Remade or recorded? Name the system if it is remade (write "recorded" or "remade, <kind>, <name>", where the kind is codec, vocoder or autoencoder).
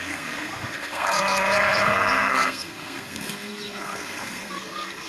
remade, codec, SNAC